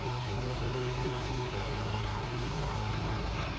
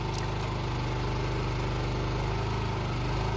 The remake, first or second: first